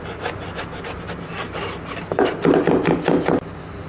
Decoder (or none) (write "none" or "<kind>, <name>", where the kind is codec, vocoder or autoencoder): none